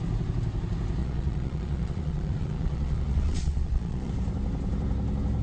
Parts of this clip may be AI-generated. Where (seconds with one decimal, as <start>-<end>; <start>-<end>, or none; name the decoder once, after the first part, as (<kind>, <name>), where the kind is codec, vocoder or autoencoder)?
1.0-4.1 (vocoder, Vocos)